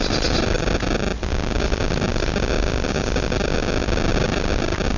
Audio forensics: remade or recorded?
recorded